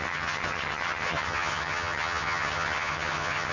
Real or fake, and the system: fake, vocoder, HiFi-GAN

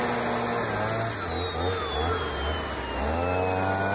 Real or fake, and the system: real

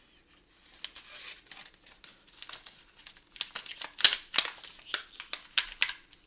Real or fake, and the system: real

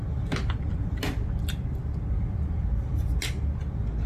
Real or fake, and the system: real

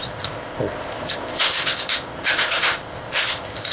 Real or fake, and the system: fake, codec, ZipCodec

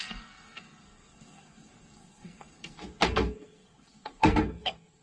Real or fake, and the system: fake, codec, SNAC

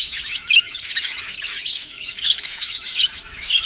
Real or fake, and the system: fake, autoencoder, DAC-VAE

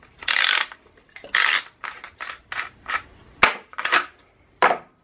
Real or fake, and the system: real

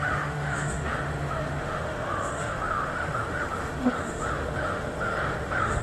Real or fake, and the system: fake, autoencoder, DAC-VAE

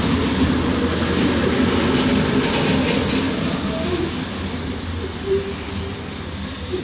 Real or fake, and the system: real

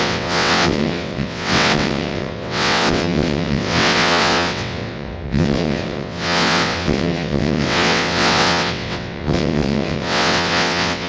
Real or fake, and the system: fake, vocoder, WaveNeXt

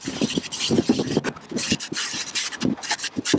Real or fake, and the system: real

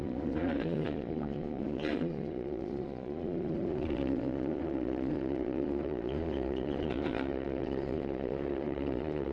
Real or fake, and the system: fake, vocoder, Vocos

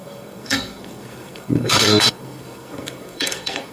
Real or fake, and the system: fake, codec, SNAC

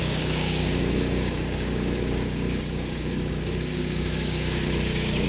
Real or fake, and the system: fake, codec, DAC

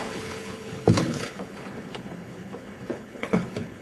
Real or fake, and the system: fake, codec, HILCodec